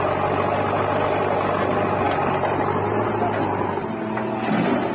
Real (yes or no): yes